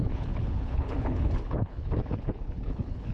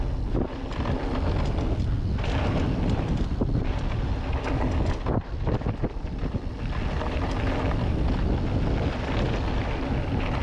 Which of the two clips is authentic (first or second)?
second